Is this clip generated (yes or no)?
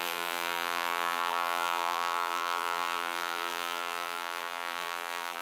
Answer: yes